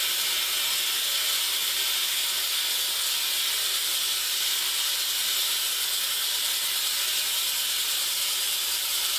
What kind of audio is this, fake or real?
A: real